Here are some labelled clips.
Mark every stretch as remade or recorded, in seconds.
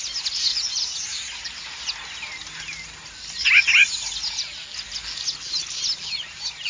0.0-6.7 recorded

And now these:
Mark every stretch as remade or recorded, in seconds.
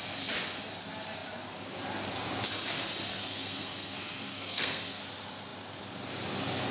0.0-3.1 recorded; 3.1-5.0 remade; 5.0-6.7 recorded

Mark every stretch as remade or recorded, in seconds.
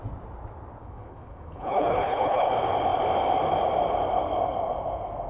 0.0-0.8 recorded; 0.8-2.5 remade; 2.5-5.3 recorded